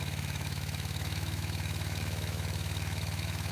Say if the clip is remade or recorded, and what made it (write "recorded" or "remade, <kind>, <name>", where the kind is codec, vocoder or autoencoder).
remade, autoencoder, DAC-VAE